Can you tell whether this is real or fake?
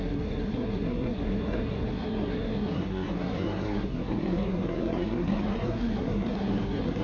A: fake